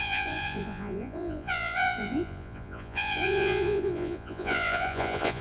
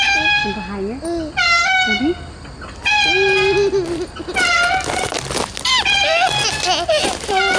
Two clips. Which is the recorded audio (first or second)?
second